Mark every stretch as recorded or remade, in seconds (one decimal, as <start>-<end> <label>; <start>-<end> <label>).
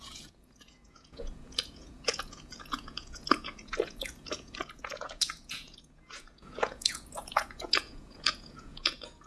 0.0-9.3 remade